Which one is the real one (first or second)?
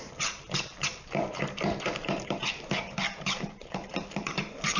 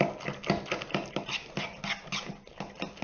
second